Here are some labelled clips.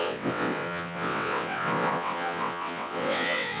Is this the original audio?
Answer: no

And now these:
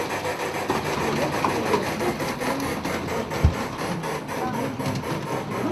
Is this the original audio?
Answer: yes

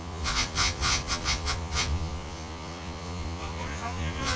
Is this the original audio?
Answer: no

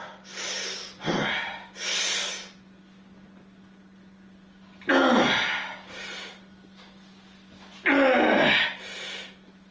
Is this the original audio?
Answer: yes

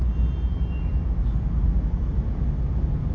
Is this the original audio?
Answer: yes